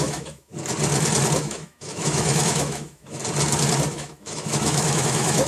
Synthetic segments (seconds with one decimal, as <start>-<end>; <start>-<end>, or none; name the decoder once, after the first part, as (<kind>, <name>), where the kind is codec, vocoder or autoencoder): 0.0-0.5 (autoencoder, DAC-VAE); 1.4-3.2; 3.9-5.5